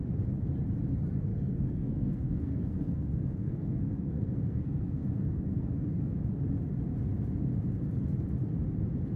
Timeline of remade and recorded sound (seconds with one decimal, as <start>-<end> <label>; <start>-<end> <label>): 0.0-1.3 recorded; 1.3-6.1 remade; 6.1-9.2 recorded